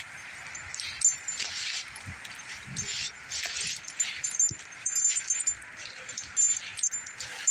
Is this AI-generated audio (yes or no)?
no